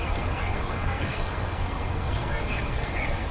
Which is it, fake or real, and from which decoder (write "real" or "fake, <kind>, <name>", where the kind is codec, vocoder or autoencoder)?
fake, codec, SNAC